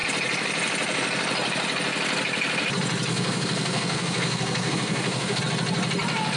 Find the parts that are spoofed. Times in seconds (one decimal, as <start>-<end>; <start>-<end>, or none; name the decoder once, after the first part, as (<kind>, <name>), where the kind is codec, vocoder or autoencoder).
3.1-5.4 (codec, SNAC)